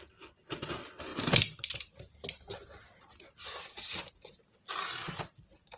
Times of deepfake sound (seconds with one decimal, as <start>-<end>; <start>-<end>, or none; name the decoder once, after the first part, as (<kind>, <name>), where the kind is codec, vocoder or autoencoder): 1.1-4.1 (vocoder, BigVGAN v2); 5.0-5.8